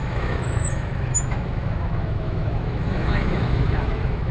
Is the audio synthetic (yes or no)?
yes